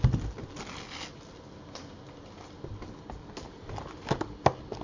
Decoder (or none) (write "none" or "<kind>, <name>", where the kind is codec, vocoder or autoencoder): none